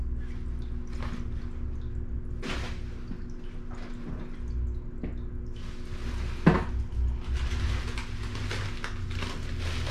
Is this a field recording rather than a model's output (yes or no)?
yes